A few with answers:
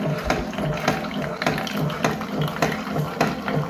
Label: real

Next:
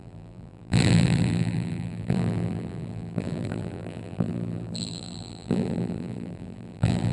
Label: fake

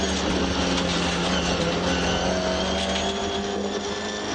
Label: real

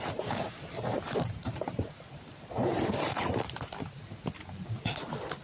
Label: fake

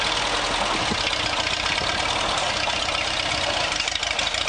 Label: real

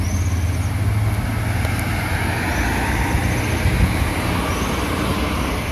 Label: real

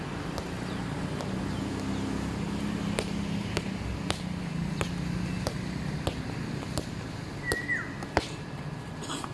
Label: real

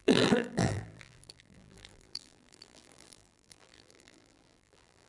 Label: fake